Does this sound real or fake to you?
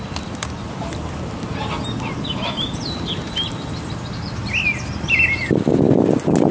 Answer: real